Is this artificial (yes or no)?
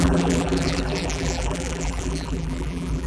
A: yes